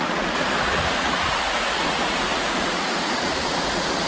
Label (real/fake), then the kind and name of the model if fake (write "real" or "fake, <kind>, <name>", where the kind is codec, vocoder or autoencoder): fake, vocoder, Vocos